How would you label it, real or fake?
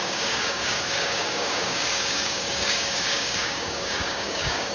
fake